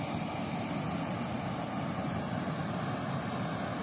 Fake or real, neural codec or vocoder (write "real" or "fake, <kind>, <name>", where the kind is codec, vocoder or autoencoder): real